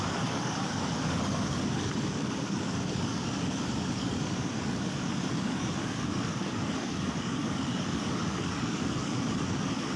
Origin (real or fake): fake